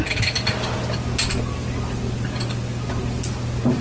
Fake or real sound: real